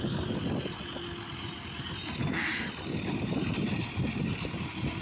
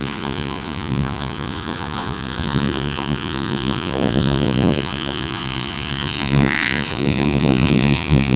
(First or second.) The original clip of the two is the first